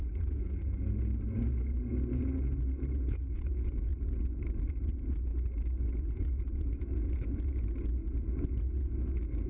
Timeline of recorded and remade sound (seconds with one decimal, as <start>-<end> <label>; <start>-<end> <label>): 0.0-3.9 remade; 3.9-4.7 recorded; 4.7-5.3 remade; 5.3-5.8 recorded; 5.8-9.5 remade